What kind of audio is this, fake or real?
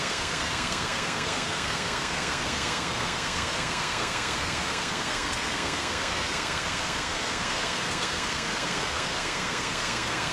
fake